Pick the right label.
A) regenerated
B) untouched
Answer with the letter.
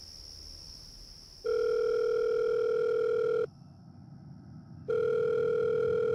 B